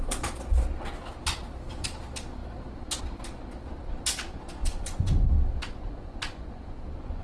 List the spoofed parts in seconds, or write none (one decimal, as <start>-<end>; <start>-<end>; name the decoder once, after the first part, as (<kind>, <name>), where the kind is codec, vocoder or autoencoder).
4.6-7.2 (vocoder, Vocos)